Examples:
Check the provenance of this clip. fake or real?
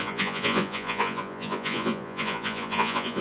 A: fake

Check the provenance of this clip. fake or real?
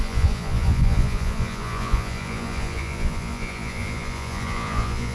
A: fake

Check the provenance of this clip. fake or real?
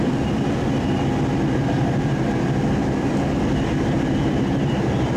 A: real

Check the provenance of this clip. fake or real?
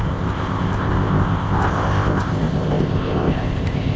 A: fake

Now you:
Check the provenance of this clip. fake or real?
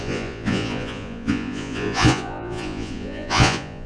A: fake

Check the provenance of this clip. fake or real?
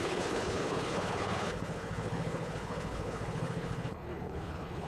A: fake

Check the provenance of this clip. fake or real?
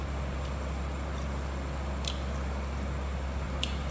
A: real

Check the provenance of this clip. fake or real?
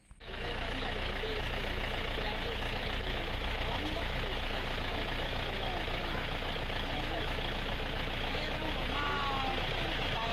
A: fake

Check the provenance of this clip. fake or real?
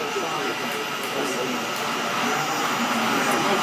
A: real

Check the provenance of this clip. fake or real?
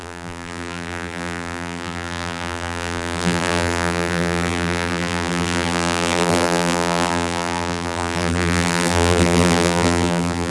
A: fake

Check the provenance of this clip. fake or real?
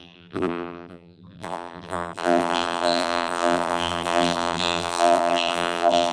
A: fake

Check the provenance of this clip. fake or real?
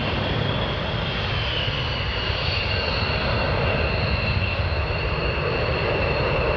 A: real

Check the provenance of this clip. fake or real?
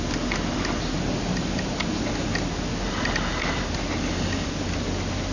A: real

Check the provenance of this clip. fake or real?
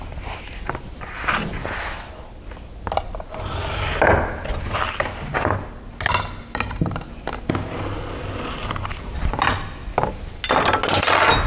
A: real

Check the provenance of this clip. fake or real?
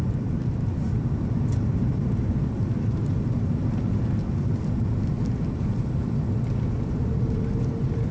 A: fake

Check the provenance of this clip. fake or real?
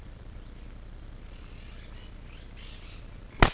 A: real